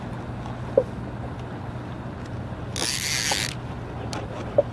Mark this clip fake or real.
real